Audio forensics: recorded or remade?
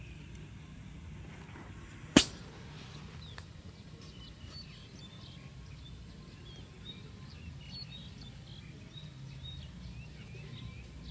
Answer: recorded